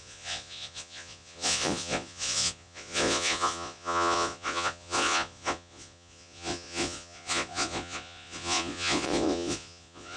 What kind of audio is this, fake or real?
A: fake